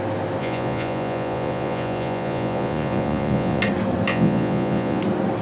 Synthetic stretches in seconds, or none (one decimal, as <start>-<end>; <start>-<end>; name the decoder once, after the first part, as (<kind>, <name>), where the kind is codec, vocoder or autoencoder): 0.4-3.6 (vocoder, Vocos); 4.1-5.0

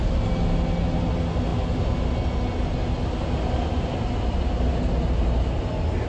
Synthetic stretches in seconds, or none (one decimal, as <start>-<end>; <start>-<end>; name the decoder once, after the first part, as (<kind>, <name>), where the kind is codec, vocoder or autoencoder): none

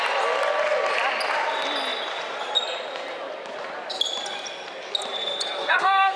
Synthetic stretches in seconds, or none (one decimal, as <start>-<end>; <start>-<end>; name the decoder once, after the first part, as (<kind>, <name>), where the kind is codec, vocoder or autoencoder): 5.6-6.2 (codec, SNAC)

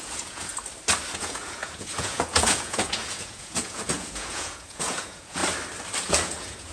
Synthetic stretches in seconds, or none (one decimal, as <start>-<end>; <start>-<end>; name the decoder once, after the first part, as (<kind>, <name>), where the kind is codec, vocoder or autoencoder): 0.0-0.5 (vocoder, Vocos); 1.1-5.4; 6.1-6.7